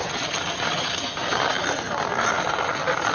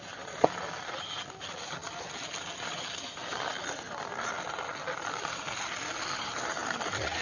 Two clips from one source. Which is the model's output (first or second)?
second